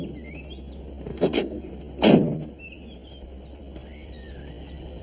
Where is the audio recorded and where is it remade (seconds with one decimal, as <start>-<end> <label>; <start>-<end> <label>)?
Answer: 0.0-1.1 recorded; 1.1-1.7 remade; 1.7-5.0 recorded